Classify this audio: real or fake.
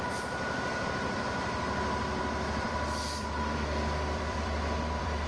fake